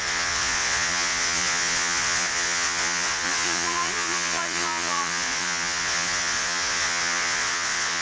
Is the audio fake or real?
fake